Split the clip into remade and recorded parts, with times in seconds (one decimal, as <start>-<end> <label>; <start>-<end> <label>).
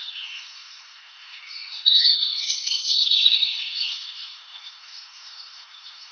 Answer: 0.0-6.1 remade